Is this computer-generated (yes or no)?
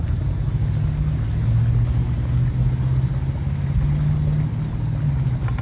no